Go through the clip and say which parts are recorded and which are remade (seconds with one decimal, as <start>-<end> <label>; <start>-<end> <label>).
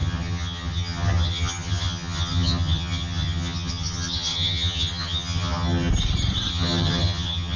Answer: 0.0-5.9 remade; 5.9-6.5 recorded; 6.5-7.6 remade